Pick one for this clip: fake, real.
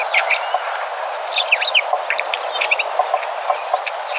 real